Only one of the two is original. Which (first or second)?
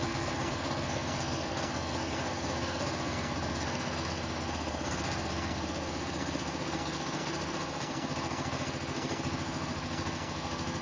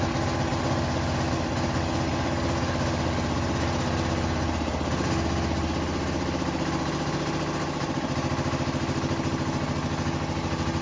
second